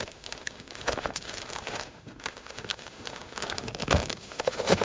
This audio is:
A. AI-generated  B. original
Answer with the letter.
A